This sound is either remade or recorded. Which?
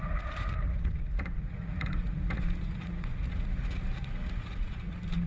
remade